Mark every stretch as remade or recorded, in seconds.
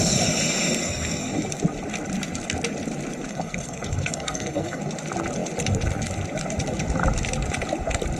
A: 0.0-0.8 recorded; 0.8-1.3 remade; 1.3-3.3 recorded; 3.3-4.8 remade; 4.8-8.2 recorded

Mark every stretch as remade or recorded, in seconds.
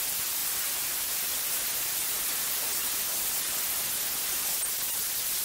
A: 0.0-5.4 recorded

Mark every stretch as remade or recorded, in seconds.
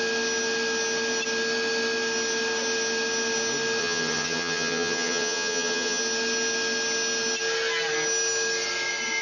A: 0.0-3.8 recorded; 3.8-6.0 remade; 6.0-9.2 recorded